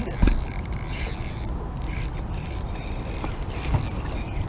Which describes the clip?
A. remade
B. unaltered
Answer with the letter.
A